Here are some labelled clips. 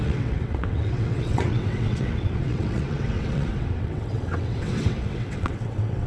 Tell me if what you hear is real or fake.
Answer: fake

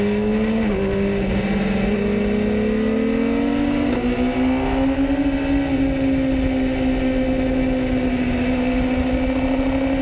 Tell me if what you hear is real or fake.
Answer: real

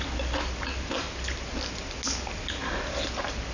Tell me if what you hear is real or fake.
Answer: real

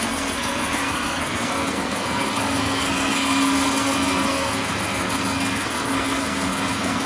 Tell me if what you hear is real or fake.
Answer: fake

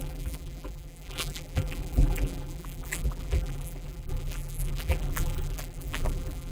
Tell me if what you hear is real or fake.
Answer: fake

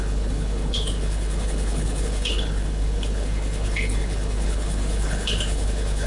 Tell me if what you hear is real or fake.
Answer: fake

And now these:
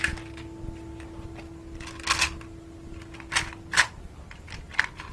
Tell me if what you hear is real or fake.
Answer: real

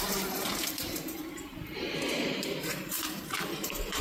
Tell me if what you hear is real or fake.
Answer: fake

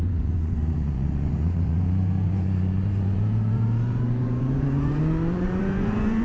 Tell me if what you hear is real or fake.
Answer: fake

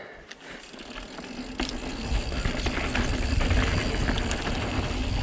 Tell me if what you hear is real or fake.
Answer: real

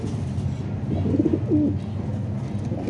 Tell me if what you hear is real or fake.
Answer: real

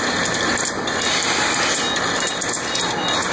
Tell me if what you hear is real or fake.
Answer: real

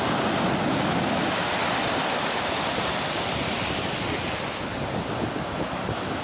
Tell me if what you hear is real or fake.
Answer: real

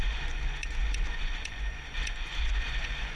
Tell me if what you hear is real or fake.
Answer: fake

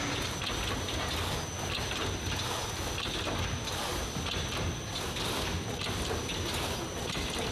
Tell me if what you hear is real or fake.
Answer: real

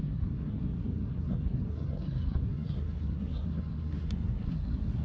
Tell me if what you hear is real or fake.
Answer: fake